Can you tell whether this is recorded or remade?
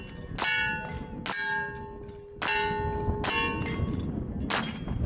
recorded